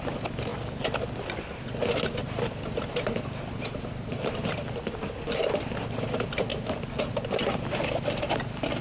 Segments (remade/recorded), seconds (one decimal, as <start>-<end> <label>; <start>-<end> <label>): 0.0-2.2 recorded; 2.2-4.5 remade; 4.5-8.8 recorded